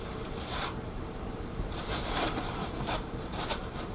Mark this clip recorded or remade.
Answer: remade